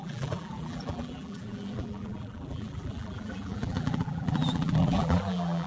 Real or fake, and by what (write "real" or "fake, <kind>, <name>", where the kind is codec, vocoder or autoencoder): fake, vocoder, BigVGAN v2